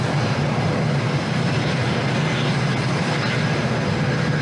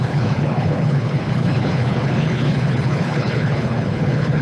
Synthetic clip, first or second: second